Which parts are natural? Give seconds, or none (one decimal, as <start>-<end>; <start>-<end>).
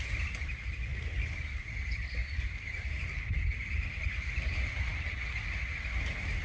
0.0-0.9; 1.7-2.2; 2.9-6.4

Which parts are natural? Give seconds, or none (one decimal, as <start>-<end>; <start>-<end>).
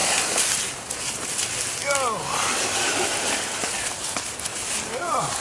0.9-4.5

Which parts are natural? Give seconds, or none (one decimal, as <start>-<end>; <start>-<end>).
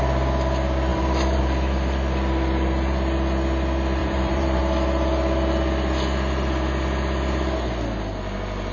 0.0-0.9; 1.4-4.0; 4.6-8.7